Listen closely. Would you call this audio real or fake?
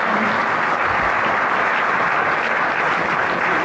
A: real